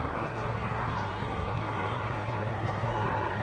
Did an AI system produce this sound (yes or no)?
yes